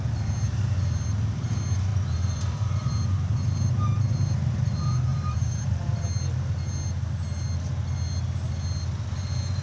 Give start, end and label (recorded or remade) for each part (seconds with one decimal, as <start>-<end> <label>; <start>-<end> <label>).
0.0-1.9 recorded; 1.9-2.9 remade; 2.9-5.1 recorded; 5.1-6.0 remade; 6.0-9.6 recorded